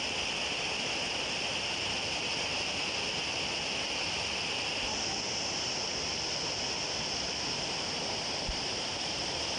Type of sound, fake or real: real